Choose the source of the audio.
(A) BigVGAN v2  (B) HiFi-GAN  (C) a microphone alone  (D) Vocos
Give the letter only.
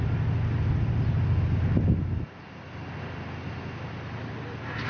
C